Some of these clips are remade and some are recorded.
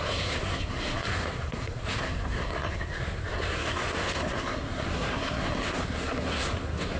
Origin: remade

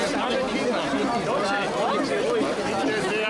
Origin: recorded